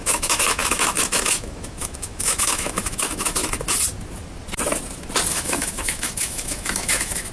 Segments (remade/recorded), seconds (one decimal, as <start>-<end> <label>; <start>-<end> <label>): 0.0-3.4 remade; 3.4-5.3 recorded; 5.3-7.3 remade